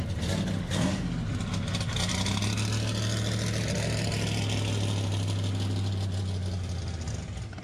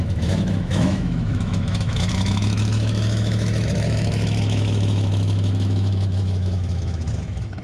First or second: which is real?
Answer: first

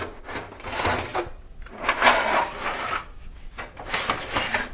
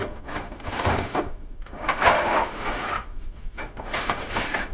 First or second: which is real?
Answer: first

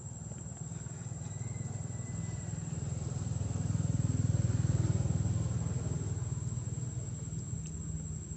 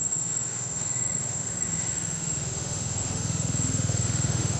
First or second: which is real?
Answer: first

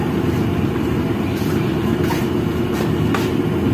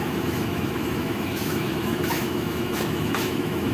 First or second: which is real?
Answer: first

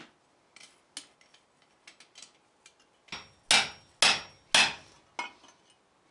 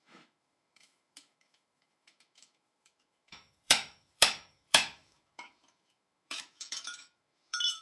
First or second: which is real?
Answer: first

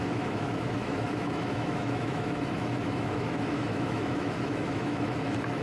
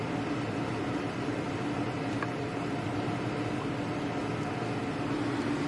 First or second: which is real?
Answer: second